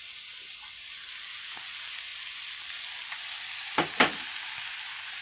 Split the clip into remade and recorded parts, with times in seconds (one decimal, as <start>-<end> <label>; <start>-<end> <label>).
0.0-5.2 recorded